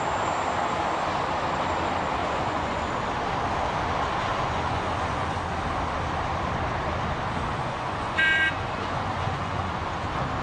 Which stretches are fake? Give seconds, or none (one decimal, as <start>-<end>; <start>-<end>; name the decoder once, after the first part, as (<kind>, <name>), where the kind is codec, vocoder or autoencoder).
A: 2.2-2.9 (vocoder, Vocos); 4.3-5.4; 7.6-9.9